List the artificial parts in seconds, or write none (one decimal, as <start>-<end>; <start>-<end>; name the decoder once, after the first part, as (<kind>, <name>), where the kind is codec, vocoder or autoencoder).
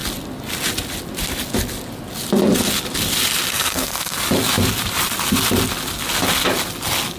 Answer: 3.5-4.2 (codec, SNAC)